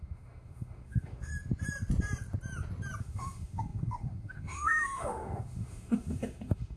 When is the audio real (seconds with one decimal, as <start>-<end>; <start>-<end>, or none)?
1.3-3.0